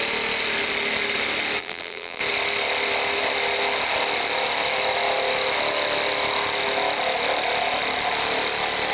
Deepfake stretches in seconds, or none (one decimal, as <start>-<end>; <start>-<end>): 1.6-2.2

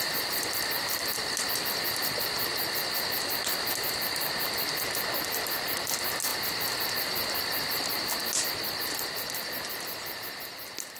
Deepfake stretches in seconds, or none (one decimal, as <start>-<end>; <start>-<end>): none

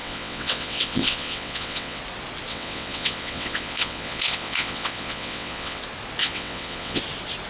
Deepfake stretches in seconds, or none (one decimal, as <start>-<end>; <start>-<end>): 0.0-2.0; 2.5-5.8; 6.2-7.0